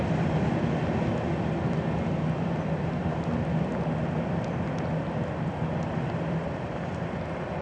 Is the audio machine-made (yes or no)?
no